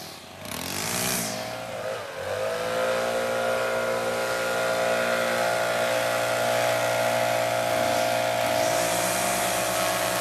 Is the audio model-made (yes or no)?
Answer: no